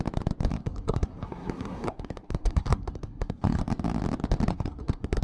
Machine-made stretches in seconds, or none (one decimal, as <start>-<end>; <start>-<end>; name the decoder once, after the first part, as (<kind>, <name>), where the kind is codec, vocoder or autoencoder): 0.5-3.6 (codec, SNAC); 4.5-5.2

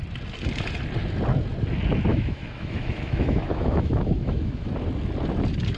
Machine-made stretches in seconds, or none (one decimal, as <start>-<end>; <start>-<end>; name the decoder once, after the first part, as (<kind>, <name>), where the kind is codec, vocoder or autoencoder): 2.1-4.7 (autoencoder, DAC-VAE)

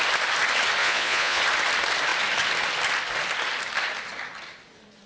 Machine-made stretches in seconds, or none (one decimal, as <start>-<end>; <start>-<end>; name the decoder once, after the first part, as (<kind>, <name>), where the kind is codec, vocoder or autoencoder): 0.8-1.4 (vocoder, Vocos)

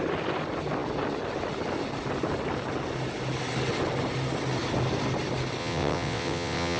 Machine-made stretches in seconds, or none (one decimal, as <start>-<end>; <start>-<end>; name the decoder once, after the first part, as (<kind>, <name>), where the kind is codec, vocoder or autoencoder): 5.6-6.8 (vocoder, WaveNeXt)

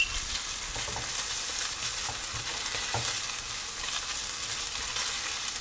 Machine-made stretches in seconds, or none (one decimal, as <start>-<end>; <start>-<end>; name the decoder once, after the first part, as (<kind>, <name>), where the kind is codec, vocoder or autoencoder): 1.1-3.0 (vocoder, BigVGAN v2)

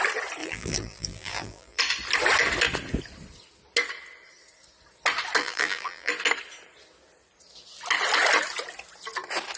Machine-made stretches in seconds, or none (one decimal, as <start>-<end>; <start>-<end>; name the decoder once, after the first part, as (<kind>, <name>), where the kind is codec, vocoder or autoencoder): 0.4-1.8 (vocoder, BigVGAN v2); 5.4-6.1

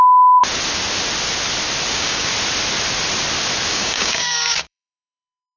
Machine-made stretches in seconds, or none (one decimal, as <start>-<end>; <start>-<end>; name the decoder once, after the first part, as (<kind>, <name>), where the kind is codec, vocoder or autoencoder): 0.0-0.4 (codec, DAC); 1.9-2.3; 3.7-5.6